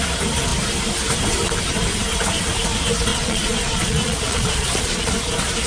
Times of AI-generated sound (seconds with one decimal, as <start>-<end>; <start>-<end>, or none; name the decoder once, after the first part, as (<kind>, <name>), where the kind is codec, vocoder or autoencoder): 3.1-5.1 (vocoder, Vocos)